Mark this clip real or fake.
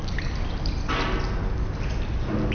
real